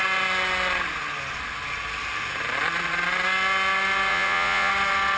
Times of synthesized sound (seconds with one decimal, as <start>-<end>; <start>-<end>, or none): 4.1-4.7